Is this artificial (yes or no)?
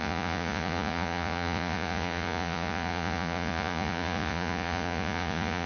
yes